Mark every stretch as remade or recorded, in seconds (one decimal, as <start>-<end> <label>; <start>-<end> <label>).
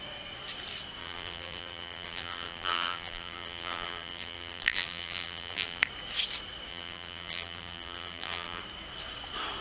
0.0-1.0 recorded; 1.0-5.8 remade; 5.8-6.7 recorded; 6.7-8.6 remade; 8.6-9.6 recorded